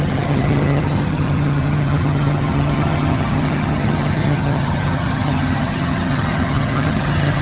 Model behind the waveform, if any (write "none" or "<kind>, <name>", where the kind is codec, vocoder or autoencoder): vocoder, HiFi-GAN